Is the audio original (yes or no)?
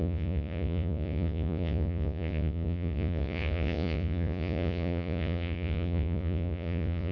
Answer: no